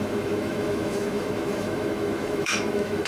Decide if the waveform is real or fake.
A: fake